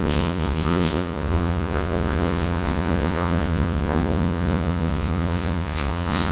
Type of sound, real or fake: fake